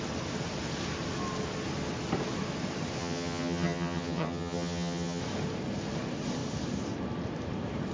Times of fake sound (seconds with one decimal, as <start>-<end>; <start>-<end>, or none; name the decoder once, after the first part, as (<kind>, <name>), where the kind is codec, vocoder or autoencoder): 3.0-5.2 (vocoder, HiFi-GAN)